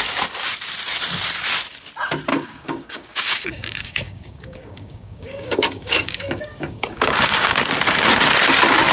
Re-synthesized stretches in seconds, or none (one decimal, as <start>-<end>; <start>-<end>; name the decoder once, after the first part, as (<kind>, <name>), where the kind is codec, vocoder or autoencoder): 2.3-7.5 (codec, DAC)